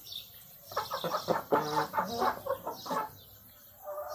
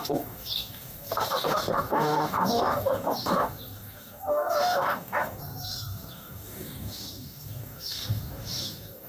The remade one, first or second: second